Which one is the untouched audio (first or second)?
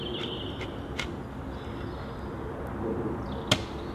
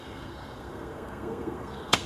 first